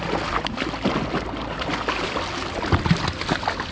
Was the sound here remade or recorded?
recorded